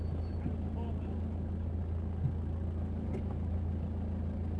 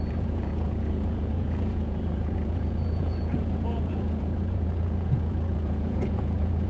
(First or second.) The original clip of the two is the first